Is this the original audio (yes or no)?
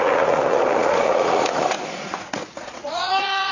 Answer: no